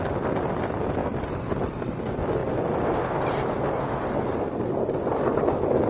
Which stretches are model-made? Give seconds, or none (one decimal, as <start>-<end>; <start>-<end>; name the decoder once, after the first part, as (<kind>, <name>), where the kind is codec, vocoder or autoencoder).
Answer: none